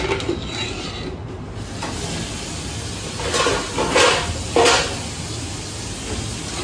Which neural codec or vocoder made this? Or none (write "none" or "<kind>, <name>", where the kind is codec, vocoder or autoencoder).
none